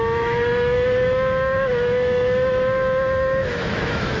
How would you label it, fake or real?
fake